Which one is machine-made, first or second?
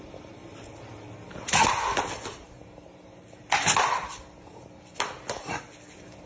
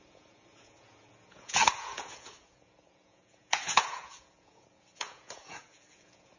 second